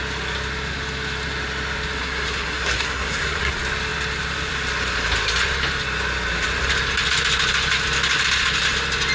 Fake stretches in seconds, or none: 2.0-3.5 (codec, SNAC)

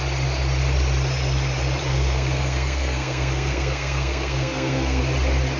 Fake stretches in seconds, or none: 1.9-5.0 (codec, SNAC)

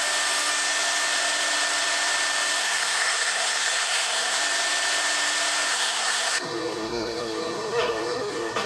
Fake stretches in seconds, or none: 2.6-4.4 (codec, SNAC); 5.7-8.7

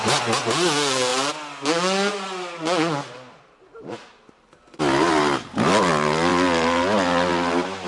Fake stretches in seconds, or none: none

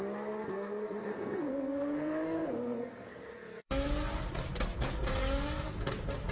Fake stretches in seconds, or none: 0.5-3.9 (codec, SNAC)

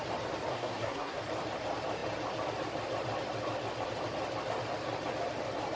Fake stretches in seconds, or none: 0.5-1.2 (codec, SNAC)

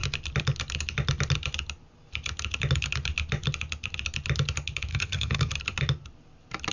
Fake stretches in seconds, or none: 4.9-5.5 (codec, SNAC)

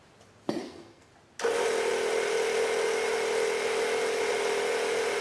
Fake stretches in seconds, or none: 0.6-1.1 (codec, SNAC)